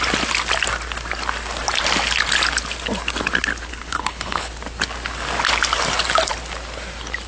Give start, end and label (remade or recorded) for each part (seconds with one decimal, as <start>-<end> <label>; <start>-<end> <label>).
0.0-3.7 recorded; 3.7-4.5 remade; 4.5-7.3 recorded